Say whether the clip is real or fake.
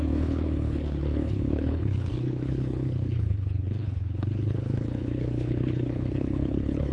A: fake